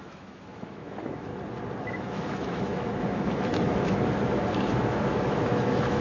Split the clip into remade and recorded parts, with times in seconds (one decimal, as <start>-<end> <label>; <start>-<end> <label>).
0.0-1.3 remade; 1.3-1.8 recorded; 1.8-6.0 remade